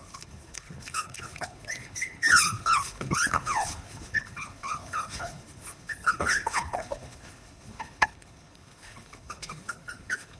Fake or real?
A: fake